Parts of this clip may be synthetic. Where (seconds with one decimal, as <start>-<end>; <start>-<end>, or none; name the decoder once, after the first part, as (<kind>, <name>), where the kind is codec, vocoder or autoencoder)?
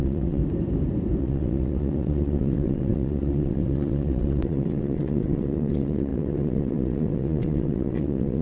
0.0-0.4 (vocoder, WaveNeXt); 1.2-8.4